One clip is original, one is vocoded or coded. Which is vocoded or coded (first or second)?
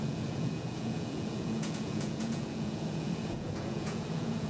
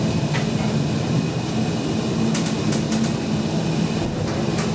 first